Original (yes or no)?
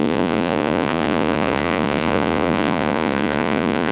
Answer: no